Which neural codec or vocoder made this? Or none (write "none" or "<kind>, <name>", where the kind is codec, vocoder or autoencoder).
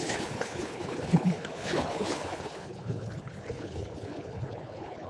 codec, HILCodec